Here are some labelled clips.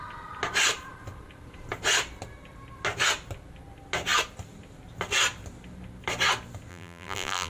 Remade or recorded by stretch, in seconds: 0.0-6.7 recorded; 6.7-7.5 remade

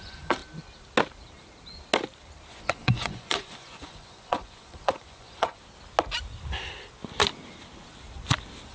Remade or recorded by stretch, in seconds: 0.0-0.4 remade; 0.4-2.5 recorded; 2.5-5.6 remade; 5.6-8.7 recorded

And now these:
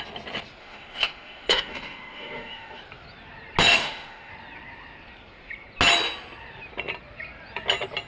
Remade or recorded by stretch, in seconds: 0.0-0.6 recorded; 0.6-2.8 remade; 2.8-3.7 recorded; 3.7-4.3 remade; 4.3-8.1 recorded

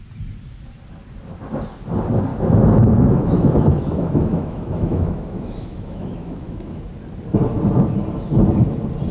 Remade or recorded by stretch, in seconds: 0.0-2.3 recorded; 2.3-6.8 remade; 6.8-9.1 recorded